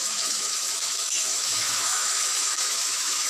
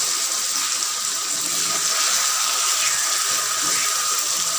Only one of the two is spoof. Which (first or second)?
first